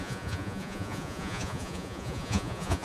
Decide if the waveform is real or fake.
fake